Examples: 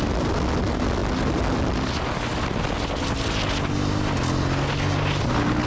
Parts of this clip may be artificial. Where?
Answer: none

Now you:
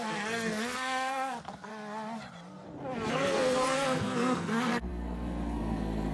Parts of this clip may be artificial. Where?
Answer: 0.0-1.7 (codec, SNAC); 3.1-6.1

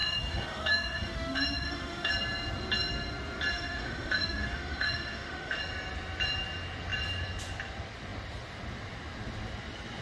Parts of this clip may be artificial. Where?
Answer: 0.0-2.1 (autoencoder, DAC-VAE); 3.5-5.6

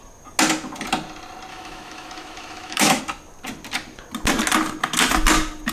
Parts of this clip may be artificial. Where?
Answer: 1.5-3.0 (autoencoder, DAC-VAE)